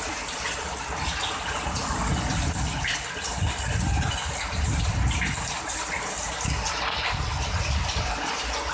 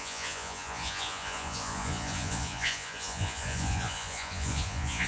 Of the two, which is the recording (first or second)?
first